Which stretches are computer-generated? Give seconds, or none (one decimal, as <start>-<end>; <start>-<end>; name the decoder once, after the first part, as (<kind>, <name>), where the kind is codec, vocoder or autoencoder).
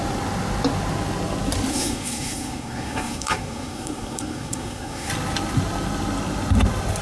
1.7-5.1 (codec, SNAC)